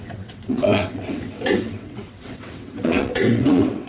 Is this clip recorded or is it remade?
remade